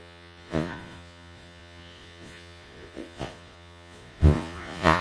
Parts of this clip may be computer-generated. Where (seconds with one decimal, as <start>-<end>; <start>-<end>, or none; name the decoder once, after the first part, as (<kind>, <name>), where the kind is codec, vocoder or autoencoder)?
0.0-5.0 (vocoder, Vocos)